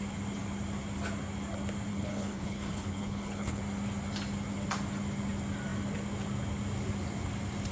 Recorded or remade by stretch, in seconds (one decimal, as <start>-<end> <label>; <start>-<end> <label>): 0.0-1.9 recorded; 1.9-3.6 remade; 3.6-7.7 recorded